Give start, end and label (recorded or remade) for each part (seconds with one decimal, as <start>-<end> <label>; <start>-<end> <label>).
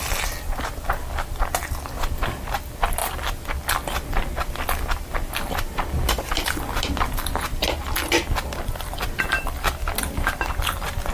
0.0-11.1 recorded